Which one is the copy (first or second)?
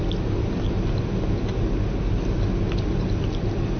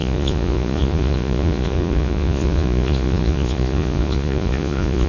second